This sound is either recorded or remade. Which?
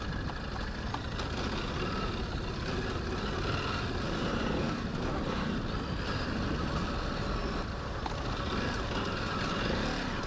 recorded